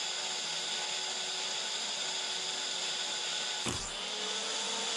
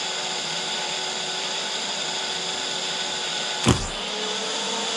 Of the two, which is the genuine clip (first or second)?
first